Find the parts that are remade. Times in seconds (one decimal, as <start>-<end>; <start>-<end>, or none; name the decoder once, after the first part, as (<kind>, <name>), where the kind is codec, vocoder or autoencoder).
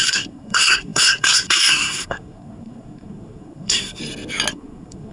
0.0-4.0 (codec, SNAC); 4.5-5.1